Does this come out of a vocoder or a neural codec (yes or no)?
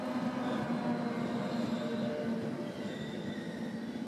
no